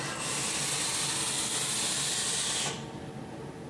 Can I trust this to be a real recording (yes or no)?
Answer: yes